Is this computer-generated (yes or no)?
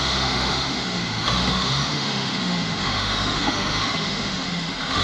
yes